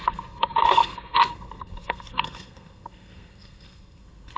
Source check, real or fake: fake